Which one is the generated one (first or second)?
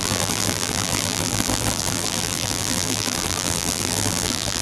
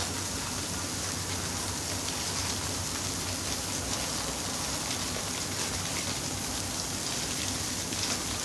first